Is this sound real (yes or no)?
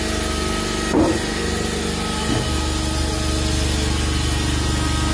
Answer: yes